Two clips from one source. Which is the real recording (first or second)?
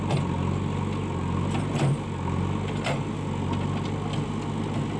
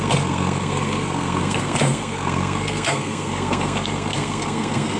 first